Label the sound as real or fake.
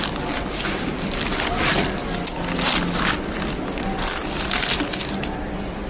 real